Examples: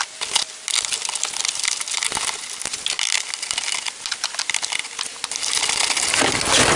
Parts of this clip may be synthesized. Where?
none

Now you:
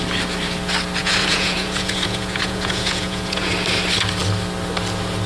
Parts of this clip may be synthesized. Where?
1.0-3.5 (vocoder, Vocos)